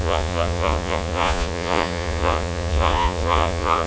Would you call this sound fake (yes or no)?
yes